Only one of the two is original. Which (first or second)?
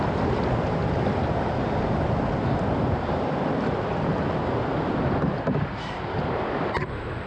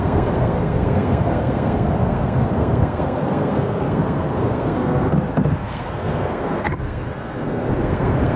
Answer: first